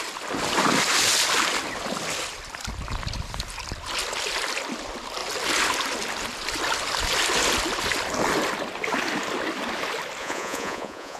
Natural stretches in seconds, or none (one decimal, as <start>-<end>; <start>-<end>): 0.0-10.2